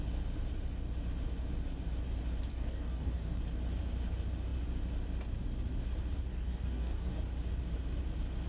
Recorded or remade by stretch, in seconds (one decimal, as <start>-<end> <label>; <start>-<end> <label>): 0.0-2.5 recorded; 2.5-3.4 remade; 3.4-6.3 recorded; 6.3-7.2 remade; 7.2-8.5 recorded